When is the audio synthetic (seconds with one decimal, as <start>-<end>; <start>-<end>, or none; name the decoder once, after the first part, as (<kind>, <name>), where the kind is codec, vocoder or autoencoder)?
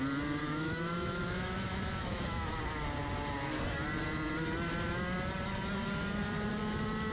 0.4-2.6 (autoencoder, DAC-VAE)